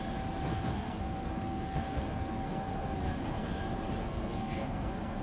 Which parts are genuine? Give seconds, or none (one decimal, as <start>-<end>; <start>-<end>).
0.0-0.5; 3.6-4.0